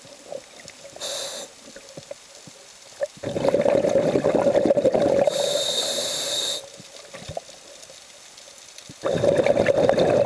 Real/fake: real